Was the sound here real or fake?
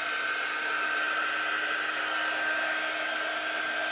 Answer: real